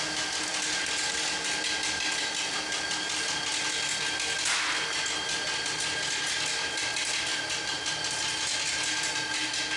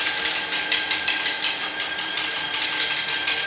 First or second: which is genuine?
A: first